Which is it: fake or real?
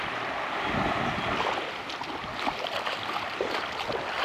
real